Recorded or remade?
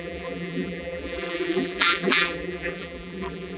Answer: remade